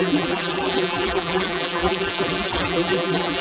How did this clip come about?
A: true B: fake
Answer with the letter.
B